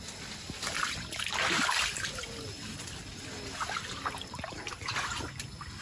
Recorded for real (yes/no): yes